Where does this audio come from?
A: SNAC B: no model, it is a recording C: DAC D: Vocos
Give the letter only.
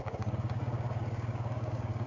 C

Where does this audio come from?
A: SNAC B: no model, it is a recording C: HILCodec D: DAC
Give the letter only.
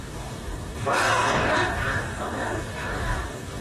D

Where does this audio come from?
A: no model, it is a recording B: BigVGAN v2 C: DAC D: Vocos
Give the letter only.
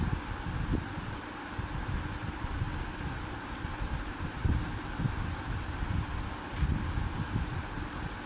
A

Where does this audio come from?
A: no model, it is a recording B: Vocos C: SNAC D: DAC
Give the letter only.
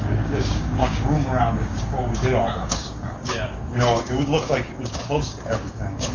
D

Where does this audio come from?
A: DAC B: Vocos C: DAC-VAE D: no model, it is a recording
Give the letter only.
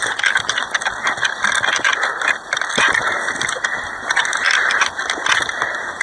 D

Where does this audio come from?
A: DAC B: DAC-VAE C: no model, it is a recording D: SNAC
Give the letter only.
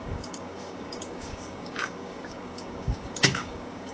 A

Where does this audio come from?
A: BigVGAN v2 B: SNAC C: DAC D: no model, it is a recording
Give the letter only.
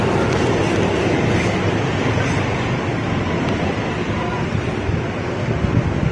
D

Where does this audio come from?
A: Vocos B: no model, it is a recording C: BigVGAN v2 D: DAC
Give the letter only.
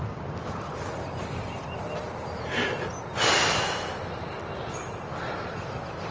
B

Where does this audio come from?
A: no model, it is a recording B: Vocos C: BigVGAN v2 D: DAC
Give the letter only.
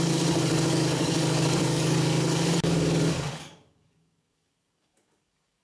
D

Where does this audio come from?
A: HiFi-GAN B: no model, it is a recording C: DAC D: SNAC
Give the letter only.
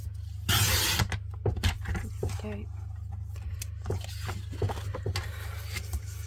B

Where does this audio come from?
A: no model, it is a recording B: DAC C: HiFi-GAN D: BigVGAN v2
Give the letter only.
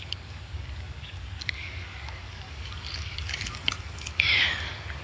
B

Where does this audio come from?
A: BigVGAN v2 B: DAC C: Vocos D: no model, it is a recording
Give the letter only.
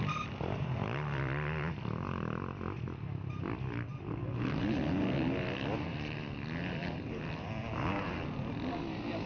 D